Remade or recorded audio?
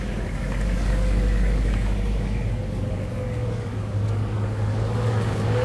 remade